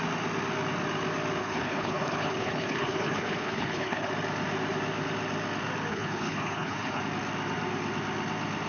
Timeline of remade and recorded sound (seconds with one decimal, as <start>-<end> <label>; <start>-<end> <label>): 0.0-1.4 recorded; 1.4-4.1 remade; 4.1-5.9 recorded; 5.9-7.0 remade; 7.0-8.7 recorded